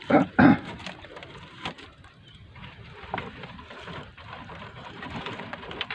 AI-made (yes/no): yes